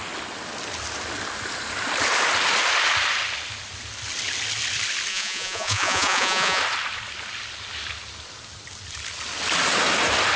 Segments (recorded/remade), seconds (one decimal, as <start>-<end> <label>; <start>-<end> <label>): 0.0-5.1 recorded; 5.1-6.6 remade; 6.6-10.4 recorded